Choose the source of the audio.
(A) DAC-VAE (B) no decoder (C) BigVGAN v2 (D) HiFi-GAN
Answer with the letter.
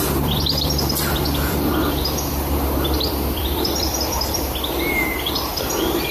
C